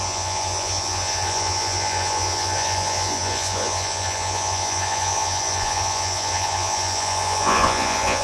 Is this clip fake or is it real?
fake